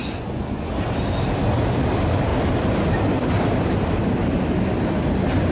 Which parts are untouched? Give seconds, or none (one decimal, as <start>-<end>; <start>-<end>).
0.7-5.5